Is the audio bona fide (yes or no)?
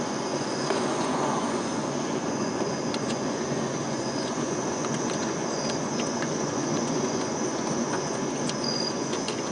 no